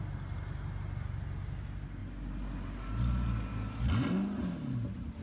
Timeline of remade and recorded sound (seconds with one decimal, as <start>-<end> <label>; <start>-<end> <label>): 0.0-5.2 recorded